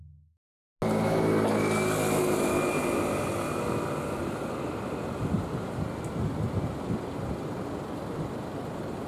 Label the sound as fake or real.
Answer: real